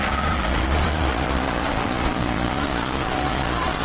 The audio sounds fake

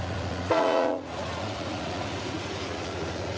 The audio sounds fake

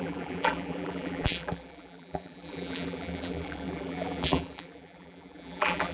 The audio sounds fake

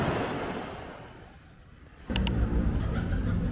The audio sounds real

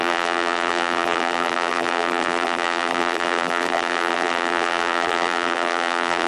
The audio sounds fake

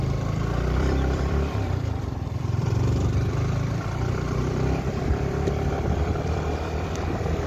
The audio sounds fake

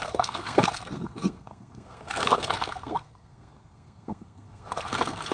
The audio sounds fake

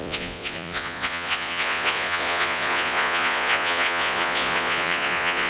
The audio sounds fake